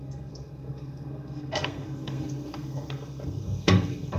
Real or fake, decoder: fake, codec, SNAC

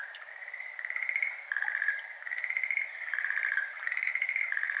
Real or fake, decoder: fake, vocoder, BigVGAN v2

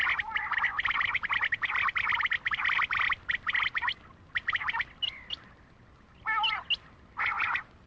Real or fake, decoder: real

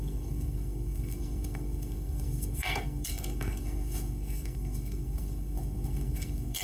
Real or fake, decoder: fake, codec, SNAC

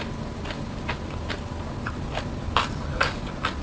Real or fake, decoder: real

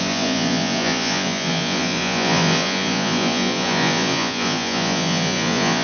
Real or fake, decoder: fake, vocoder, Vocos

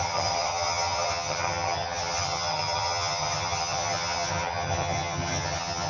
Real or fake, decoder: fake, vocoder, HiFi-GAN